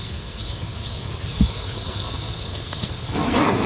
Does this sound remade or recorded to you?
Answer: remade